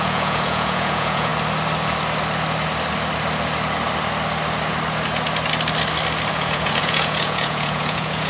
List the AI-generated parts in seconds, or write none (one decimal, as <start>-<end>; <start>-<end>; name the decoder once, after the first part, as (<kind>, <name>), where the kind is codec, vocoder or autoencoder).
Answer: 0.0-1.3 (vocoder, Vocos); 6.3-8.3